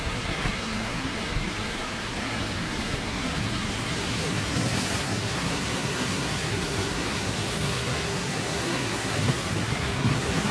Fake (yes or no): yes